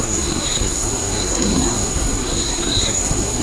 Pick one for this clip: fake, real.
fake